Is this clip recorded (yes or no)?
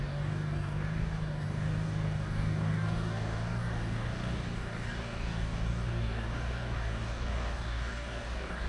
no